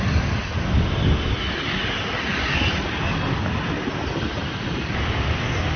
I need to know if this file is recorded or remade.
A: recorded